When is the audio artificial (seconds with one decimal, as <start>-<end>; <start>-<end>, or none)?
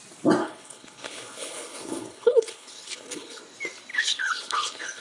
0.4-3.4; 3.9-5.0